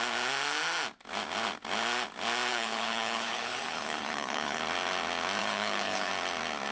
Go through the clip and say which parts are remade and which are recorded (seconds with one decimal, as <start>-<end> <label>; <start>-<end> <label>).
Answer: 0.0-2.5 recorded; 2.5-4.6 remade; 4.6-5.4 recorded; 5.4-6.1 remade; 6.1-6.7 recorded